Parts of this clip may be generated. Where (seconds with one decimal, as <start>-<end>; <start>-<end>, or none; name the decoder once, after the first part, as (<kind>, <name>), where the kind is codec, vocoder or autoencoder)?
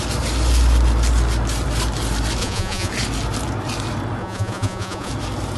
2.4-2.9 (vocoder, Vocos); 4.2-5.1